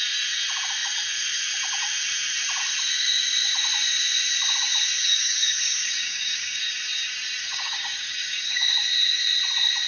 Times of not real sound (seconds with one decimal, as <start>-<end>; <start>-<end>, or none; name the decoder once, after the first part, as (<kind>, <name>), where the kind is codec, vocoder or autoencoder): 5.0-6.6 (codec, DAC); 7.4-8.7